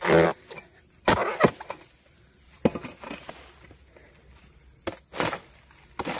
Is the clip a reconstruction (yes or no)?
no